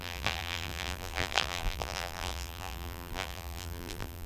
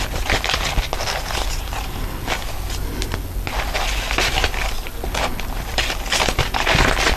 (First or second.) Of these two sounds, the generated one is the first